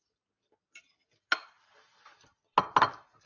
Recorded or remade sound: recorded